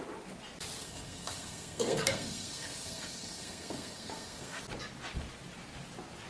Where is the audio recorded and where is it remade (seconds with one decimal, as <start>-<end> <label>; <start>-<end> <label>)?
0.0-0.8 recorded; 0.8-4.6 remade; 4.6-6.3 recorded